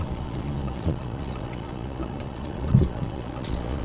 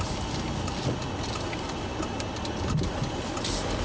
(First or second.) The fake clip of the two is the first